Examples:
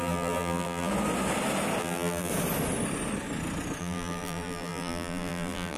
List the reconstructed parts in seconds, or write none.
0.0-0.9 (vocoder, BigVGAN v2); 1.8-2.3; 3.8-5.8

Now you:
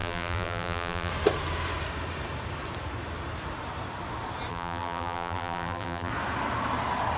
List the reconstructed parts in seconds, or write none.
0.0-1.1 (vocoder, BigVGAN v2); 4.5-6.1

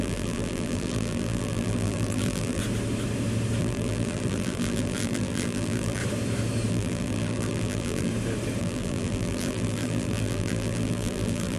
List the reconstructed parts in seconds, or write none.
0.0-2.6 (vocoder, BigVGAN v2); 3.6-6.0; 6.7-8.1; 8.6-11.6

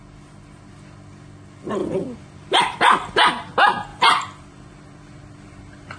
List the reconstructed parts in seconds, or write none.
1.8-2.6 (vocoder, BigVGAN v2); 3.9-6.0